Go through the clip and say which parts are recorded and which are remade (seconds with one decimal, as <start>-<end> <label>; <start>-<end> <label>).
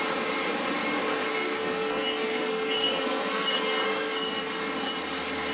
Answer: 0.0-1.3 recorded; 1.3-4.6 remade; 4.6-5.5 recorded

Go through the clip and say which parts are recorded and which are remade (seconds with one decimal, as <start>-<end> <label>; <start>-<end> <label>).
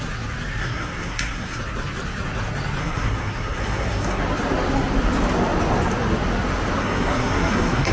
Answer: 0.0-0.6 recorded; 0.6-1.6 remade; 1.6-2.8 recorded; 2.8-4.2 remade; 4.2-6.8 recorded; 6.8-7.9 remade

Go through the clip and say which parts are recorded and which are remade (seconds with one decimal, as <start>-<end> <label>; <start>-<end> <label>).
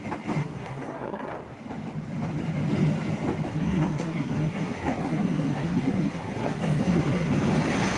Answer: 0.0-0.4 recorded; 0.4-1.3 remade; 1.3-3.5 recorded; 3.5-7.3 remade; 7.3-8.0 recorded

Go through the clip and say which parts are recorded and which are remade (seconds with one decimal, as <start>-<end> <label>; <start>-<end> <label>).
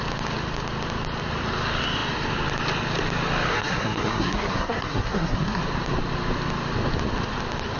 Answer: 0.0-3.5 recorded; 3.5-5.6 remade; 5.6-7.8 recorded